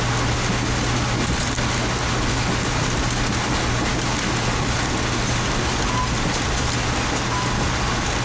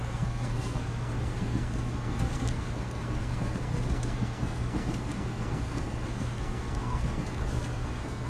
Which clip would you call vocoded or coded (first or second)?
second